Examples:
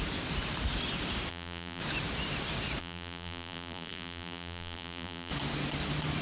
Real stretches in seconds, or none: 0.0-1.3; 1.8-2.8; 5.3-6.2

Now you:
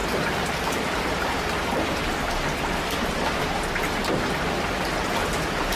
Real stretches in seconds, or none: 0.0-5.2

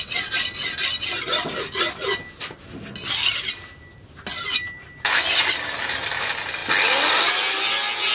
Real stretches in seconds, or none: 0.0-8.1

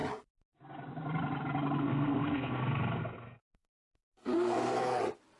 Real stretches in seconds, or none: 0.0-1.8; 5.0-5.4

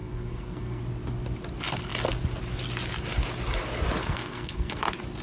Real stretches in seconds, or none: 0.8-4.0; 4.8-5.2

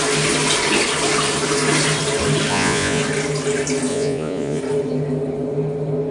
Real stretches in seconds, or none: 0.0-2.5; 3.0-3.9; 4.6-6.1